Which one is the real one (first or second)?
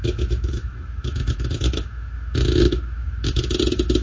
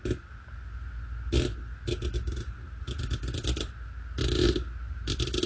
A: second